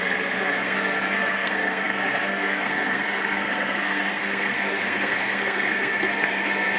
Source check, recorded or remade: remade